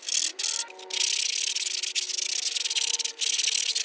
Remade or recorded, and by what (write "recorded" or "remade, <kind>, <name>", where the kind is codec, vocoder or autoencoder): recorded